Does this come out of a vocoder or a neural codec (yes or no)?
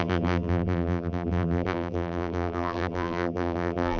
yes